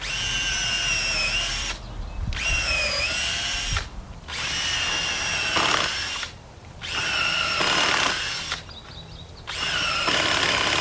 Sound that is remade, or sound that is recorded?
recorded